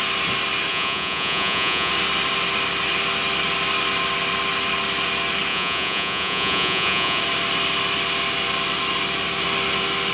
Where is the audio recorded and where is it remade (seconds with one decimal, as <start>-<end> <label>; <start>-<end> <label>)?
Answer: 0.0-0.7 recorded; 0.7-1.9 remade; 1.9-5.5 recorded; 5.5-7.2 remade; 7.2-10.1 recorded